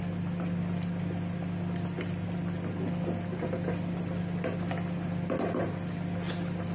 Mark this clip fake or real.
real